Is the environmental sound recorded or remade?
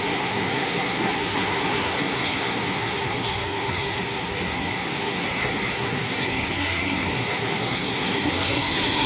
remade